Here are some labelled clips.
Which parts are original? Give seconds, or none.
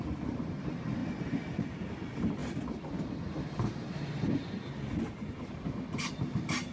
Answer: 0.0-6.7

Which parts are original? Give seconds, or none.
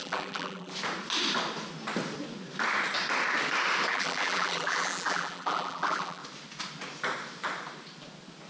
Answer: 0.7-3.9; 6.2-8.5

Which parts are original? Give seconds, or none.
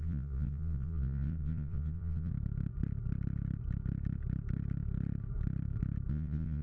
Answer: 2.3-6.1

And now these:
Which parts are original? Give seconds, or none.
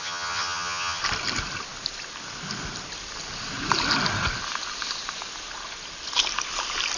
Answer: 1.0-7.0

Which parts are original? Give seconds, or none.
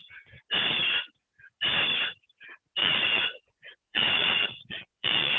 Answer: 0.0-2.8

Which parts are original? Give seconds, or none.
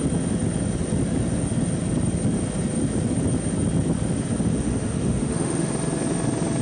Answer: 0.0-4.5; 5.7-6.6